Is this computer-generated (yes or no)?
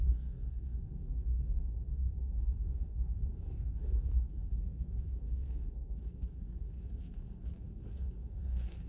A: yes